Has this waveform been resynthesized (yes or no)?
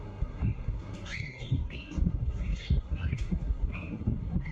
yes